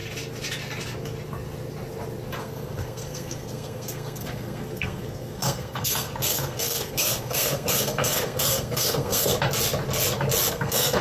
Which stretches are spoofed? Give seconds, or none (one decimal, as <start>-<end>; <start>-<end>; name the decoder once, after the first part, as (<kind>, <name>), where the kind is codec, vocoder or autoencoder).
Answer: 2.4-9.3 (codec, SNAC); 10.5-11.0